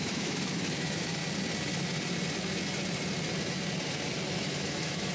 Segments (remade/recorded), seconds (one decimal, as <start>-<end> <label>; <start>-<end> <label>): 0.0-1.2 remade; 1.2-4.3 recorded; 4.3-5.1 remade